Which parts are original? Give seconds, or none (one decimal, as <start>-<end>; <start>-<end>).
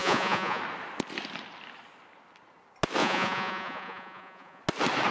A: 0.6-3.0; 4.6-5.1